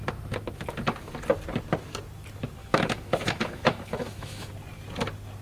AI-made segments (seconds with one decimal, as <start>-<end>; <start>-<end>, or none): 2.6-4.5